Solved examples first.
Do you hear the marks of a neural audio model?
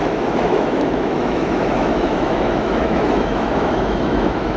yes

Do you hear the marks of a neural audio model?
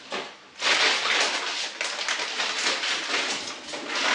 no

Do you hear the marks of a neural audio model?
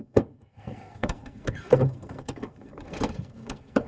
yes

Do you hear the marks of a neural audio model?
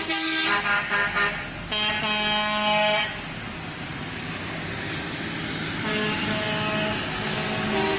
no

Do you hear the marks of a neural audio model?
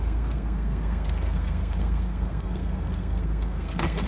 yes